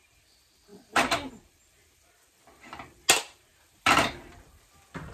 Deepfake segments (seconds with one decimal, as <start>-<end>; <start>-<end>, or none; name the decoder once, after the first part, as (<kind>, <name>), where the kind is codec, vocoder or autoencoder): 0.7-1.3 (vocoder, BigVGAN v2)